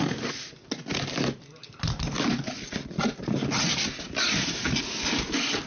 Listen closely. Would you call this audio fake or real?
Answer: real